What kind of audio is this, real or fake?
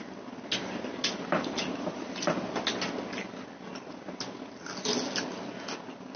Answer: real